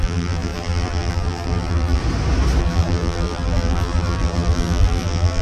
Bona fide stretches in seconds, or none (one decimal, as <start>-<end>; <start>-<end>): 2.0-2.6